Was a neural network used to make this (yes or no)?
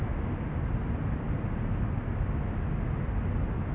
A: no